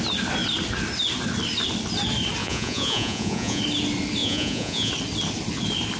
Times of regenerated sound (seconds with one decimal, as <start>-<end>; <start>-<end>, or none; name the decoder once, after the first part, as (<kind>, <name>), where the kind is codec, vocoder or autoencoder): 2.4-3.6 (vocoder, Vocos); 4.2-4.9